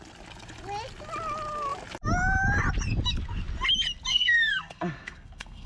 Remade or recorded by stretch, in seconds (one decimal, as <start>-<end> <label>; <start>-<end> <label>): 0.0-4.1 recorded; 4.1-5.7 remade